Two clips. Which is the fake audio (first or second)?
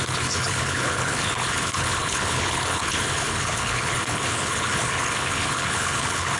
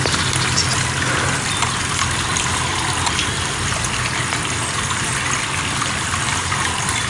first